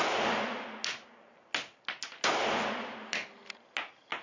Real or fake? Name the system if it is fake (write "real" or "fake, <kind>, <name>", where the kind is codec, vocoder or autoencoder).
real